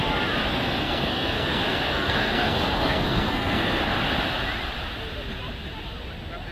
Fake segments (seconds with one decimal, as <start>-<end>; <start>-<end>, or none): 0.5-3.8